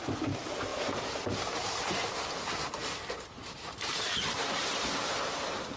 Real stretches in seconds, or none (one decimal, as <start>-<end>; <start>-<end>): 0.0-2.8; 5.1-5.8